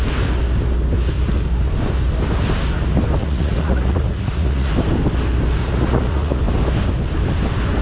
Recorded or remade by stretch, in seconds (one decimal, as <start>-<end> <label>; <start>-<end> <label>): 0.0-3.2 recorded; 3.2-4.7 remade; 4.7-5.6 recorded; 5.6-6.4 remade; 6.4-7.8 recorded